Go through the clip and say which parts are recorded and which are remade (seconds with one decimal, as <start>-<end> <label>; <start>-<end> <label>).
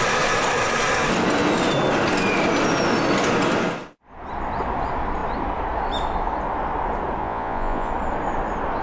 0.0-7.2 recorded; 7.2-7.9 remade; 7.9-8.8 recorded